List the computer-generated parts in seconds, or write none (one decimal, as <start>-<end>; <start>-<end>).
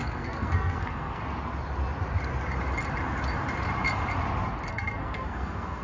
0.0-1.2; 4.7-5.8